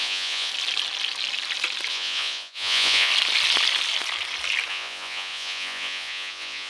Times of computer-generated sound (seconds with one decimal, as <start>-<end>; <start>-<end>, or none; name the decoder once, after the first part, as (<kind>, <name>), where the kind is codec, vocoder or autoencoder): 0.0-0.5 (vocoder, Vocos); 1.9-3.1; 4.7-6.7